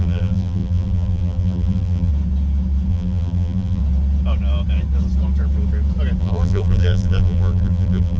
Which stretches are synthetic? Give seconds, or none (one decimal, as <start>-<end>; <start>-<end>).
0.0-2.1; 2.9-3.8; 6.2-8.2